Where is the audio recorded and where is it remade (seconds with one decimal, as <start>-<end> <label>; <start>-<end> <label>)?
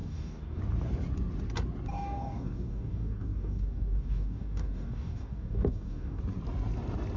0.0-0.6 remade; 0.6-1.9 recorded; 1.9-6.2 remade; 6.2-7.2 recorded